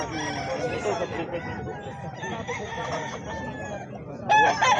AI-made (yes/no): no